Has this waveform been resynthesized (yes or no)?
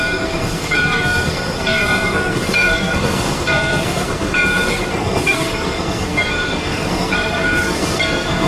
yes